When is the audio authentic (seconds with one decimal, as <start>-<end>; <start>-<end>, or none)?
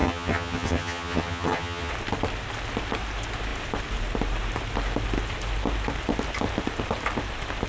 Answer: 1.9-7.7